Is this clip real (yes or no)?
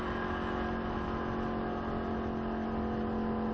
yes